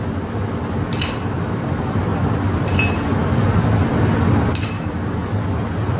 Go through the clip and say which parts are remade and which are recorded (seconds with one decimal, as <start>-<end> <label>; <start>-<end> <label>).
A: 0.0-6.0 recorded